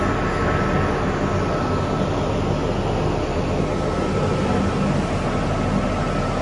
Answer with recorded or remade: recorded